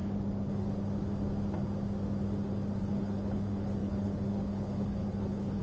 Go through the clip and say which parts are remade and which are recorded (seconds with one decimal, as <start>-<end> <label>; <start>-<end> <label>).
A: 0.0-2.8 recorded; 2.8-5.6 remade